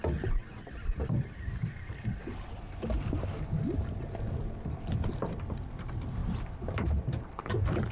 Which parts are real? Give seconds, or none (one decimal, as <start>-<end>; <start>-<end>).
0.0-7.9